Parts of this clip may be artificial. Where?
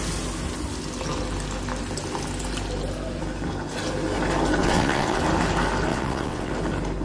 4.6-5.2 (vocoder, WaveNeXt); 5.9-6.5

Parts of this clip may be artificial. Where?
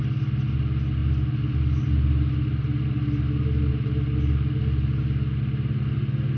none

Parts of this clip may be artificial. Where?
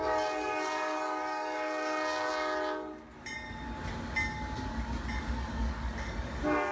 0.0-2.3 (codec, DAC); 5.2-6.7